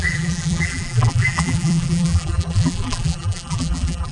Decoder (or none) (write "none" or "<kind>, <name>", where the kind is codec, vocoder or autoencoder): vocoder, BigVGAN v2